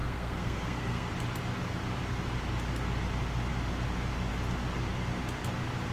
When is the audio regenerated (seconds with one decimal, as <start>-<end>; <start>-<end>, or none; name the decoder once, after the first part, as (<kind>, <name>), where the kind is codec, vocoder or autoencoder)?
0.0-1.1 (codec, SNAC)